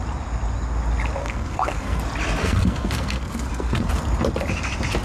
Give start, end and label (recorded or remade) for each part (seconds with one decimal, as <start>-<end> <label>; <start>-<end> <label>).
0.0-1.2 recorded; 1.2-2.0 remade; 2.0-2.4 recorded; 2.4-3.9 remade; 3.9-5.0 recorded